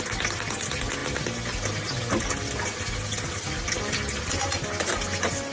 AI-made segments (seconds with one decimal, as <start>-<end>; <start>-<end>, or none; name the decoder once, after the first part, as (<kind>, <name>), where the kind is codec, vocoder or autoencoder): none